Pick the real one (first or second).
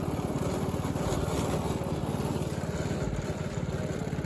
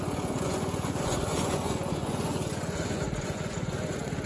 first